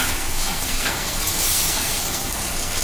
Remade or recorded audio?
remade